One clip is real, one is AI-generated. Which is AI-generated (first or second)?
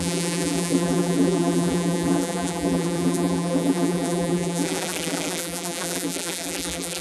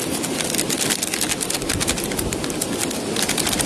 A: first